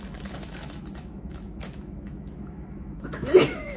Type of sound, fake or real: fake